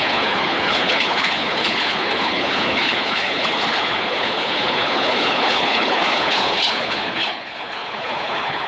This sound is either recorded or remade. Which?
remade